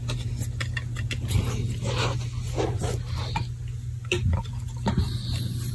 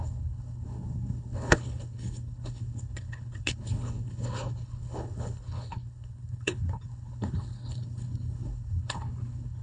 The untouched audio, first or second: first